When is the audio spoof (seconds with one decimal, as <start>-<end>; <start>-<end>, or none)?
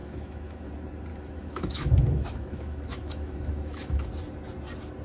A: 0.0-0.7; 1.1-4.1